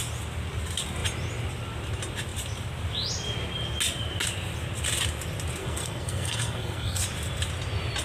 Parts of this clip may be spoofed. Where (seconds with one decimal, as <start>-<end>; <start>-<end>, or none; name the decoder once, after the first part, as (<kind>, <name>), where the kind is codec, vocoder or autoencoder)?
5.6-7.0 (codec, SNAC)